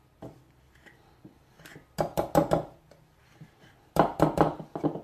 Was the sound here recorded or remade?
recorded